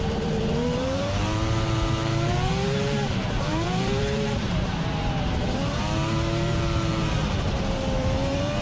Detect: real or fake fake